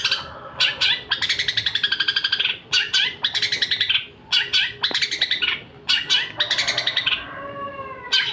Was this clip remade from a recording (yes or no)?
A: no